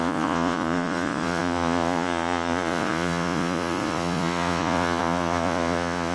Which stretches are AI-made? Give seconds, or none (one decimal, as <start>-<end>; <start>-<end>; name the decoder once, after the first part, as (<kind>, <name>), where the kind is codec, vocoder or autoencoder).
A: 0.0-6.1 (vocoder, Vocos)